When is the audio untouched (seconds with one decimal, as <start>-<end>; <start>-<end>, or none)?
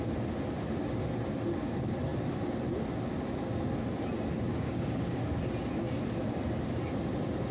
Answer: 0.0-4.5; 5.4-7.5